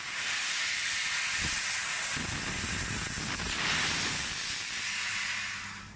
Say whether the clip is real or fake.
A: real